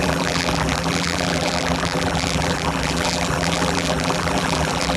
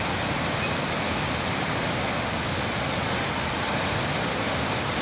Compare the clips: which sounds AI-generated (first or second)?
first